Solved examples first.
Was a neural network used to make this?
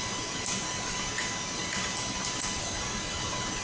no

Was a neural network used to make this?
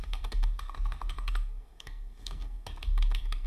yes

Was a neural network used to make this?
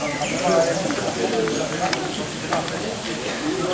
no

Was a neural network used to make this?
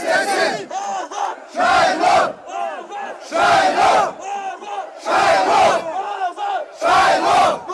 no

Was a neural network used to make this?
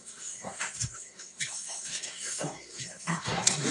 yes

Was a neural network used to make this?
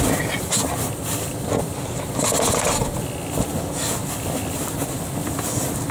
no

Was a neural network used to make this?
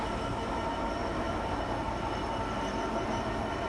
no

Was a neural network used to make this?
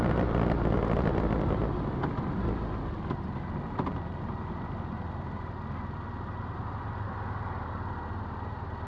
no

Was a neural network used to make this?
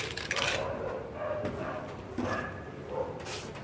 no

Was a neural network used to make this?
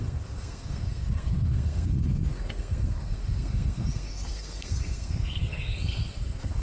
yes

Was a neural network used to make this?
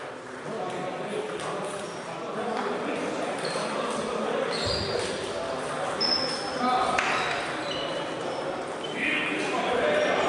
no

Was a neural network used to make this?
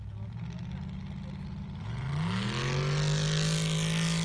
no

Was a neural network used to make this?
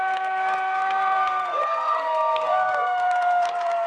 yes